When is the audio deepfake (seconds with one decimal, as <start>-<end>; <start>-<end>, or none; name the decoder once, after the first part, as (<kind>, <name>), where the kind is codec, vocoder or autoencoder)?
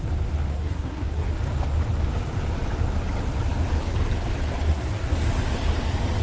0.5-1.3 (codec, SNAC); 4.7-5.2